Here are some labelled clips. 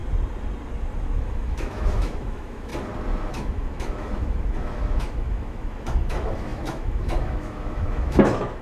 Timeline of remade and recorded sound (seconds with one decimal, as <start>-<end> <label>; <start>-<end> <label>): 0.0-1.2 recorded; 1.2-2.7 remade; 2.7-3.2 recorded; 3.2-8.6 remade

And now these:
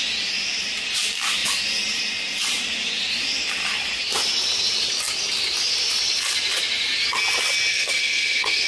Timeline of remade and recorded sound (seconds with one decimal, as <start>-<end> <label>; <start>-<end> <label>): 0.0-7.7 recorded; 7.7-8.7 remade

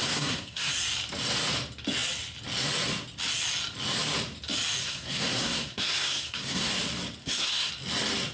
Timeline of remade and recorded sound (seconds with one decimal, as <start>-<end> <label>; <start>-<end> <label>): 0.0-0.7 remade; 0.7-4.8 recorded; 4.8-6.7 remade; 6.7-7.2 recorded; 7.2-7.7 remade; 7.7-8.3 recorded